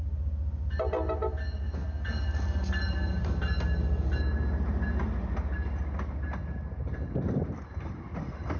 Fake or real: real